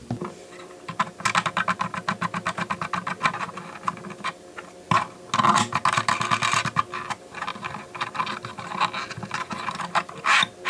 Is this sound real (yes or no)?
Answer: yes